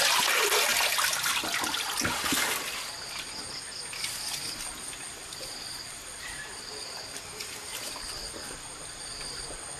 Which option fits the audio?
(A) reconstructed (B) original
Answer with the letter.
B